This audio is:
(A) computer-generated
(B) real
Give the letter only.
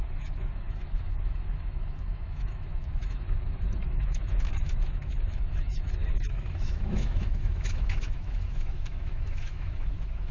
A